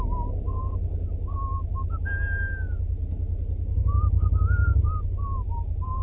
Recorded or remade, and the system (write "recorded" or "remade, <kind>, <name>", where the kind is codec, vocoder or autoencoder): recorded